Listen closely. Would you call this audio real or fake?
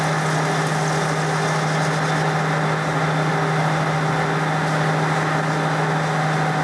real